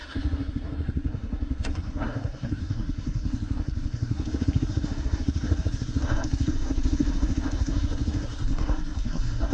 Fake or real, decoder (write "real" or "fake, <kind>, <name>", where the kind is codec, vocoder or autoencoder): fake, codec, SNAC